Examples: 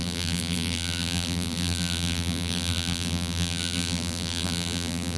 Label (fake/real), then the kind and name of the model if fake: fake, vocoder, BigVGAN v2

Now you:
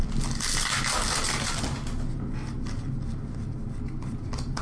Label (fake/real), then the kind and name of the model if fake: real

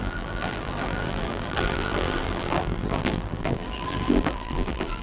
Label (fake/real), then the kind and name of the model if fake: fake, vocoder, BigVGAN v2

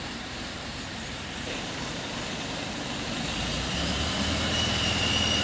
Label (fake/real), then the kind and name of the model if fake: fake, vocoder, BigVGAN v2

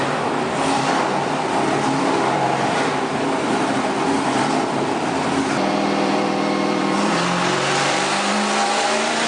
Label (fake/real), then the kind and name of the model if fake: fake, vocoder, BigVGAN v2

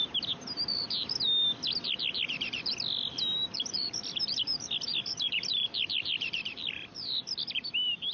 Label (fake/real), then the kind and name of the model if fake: fake, vocoder, BigVGAN v2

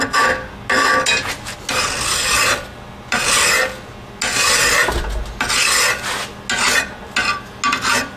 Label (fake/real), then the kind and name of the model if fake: real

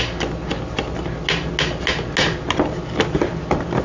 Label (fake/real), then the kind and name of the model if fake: real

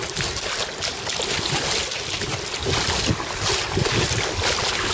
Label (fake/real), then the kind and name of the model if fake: real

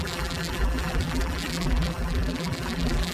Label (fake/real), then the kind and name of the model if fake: fake, vocoder, BigVGAN v2